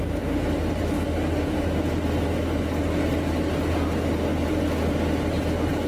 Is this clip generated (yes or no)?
no